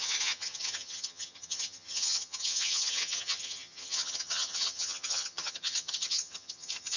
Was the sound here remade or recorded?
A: remade